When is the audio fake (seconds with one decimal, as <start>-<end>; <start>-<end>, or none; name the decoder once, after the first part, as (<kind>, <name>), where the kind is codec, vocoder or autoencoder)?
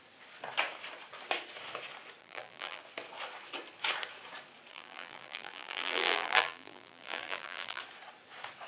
2.2-2.8 (vocoder, BigVGAN v2); 4.7-7.8